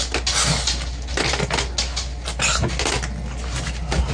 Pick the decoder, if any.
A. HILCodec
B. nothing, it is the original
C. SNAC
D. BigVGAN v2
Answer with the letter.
B